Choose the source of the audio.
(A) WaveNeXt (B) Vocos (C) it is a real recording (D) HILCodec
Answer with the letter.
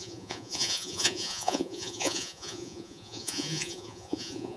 B